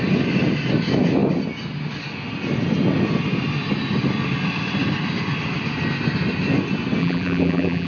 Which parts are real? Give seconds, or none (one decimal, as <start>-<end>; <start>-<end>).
0.0-7.0